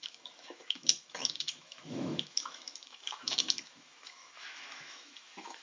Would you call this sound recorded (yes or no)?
no